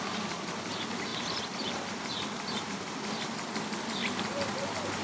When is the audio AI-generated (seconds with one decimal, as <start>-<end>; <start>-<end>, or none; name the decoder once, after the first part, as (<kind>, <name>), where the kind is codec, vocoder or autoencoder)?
0.0-5.0 (vocoder, BigVGAN v2)